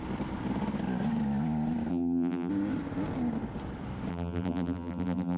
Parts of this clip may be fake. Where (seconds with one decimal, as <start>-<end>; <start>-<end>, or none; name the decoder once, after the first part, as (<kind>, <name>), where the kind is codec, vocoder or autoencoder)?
1.9-2.5 (vocoder, BigVGAN v2); 4.1-5.4